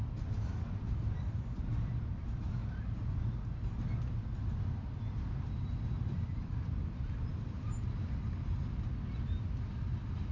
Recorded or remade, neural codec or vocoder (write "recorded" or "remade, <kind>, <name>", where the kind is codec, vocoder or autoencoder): recorded